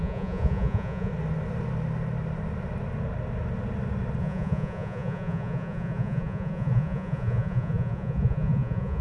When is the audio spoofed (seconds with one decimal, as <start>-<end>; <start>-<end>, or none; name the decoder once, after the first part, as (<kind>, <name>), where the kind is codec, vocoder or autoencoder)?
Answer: 0.0-1.1 (vocoder, Vocos); 4.2-9.0